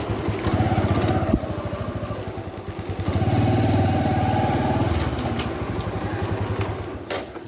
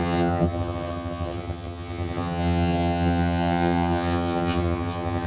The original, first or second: first